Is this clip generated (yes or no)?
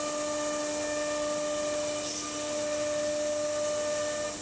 no